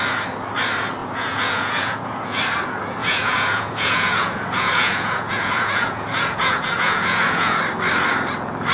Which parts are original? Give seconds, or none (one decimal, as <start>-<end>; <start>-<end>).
0.0-1.0; 2.4-3.0; 7.6-8.7